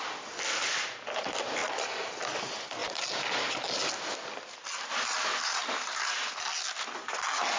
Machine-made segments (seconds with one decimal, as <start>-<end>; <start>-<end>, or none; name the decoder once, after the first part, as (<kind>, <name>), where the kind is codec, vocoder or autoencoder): none